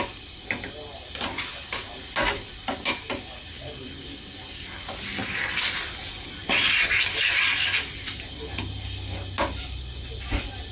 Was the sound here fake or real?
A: real